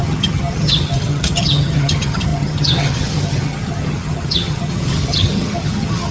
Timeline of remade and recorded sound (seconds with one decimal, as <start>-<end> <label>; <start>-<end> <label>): 0.0-6.1 remade

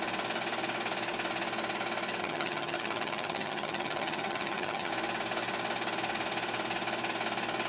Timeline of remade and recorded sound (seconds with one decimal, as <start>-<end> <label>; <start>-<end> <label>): 0.0-2.2 recorded; 2.2-4.9 remade; 4.9-7.7 recorded

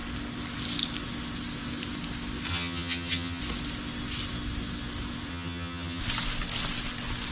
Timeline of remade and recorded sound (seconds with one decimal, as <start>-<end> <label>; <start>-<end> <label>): 0.0-2.5 recorded; 2.5-3.4 remade; 3.4-5.3 recorded; 5.3-6.0 remade; 6.0-7.3 recorded

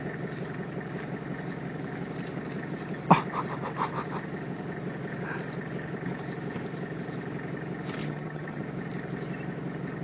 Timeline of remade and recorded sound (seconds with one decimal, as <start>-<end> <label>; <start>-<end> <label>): 0.0-8.0 recorded; 8.0-8.6 remade; 8.6-10.0 recorded

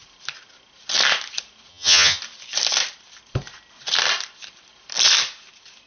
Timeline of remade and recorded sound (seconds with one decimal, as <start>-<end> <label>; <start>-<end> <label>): 0.0-1.7 recorded; 1.7-2.2 remade; 2.2-5.9 recorded

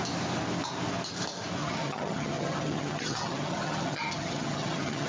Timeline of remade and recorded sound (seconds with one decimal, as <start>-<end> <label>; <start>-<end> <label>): 0.0-1.6 recorded; 1.6-5.1 remade